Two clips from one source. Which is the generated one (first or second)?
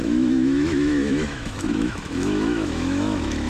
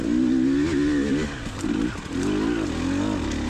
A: first